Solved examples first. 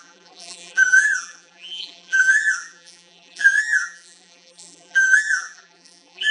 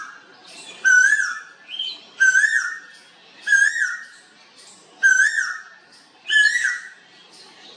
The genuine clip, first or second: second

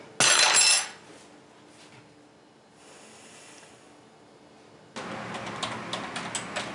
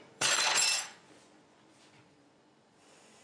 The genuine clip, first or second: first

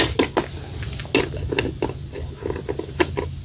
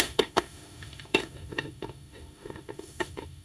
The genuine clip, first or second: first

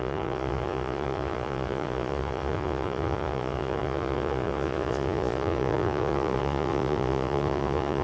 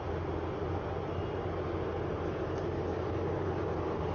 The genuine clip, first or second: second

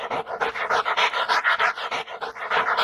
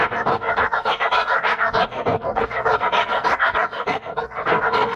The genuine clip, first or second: first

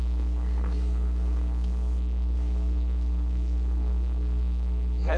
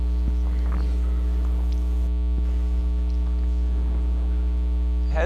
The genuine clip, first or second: second